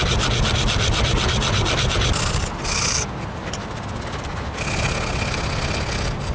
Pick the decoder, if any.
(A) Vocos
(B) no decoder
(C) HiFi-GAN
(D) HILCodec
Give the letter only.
B